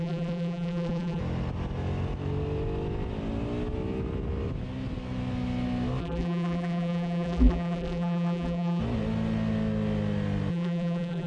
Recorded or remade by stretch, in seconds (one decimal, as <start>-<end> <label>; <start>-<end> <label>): 0.0-1.2 remade; 1.2-6.0 recorded; 6.0-8.8 remade; 8.8-10.5 recorded; 10.5-11.3 remade